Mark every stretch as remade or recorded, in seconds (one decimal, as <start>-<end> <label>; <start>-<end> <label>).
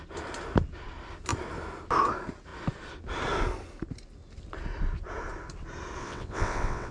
0.0-6.0 recorded; 6.0-6.9 remade